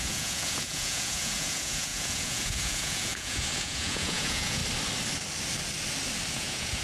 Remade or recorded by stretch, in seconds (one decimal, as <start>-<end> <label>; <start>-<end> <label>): 0.0-4.6 remade; 4.6-6.3 recorded; 6.3-6.8 remade